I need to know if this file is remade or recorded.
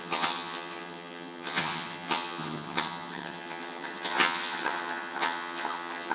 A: remade